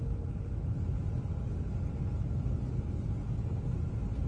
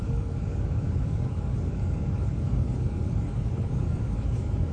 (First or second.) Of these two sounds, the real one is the first